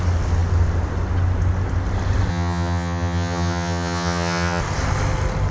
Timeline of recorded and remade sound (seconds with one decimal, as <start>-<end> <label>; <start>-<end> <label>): 0.0-2.3 recorded; 2.3-4.6 remade; 4.6-5.5 recorded